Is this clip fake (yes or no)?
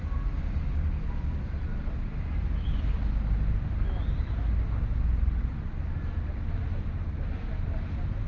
no